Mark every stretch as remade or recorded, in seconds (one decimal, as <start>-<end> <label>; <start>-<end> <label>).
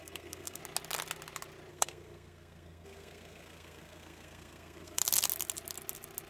0.0-0.6 remade; 0.6-1.7 recorded; 1.7-5.0 remade; 5.0-6.3 recorded